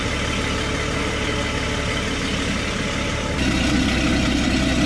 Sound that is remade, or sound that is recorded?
recorded